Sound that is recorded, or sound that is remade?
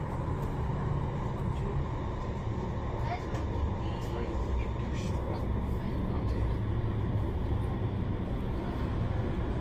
recorded